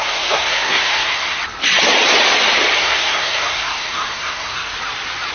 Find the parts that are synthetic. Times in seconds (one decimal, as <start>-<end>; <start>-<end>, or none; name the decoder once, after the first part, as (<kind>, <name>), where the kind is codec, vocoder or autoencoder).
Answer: 0.0-1.4 (codec, SNAC); 2.8-4.7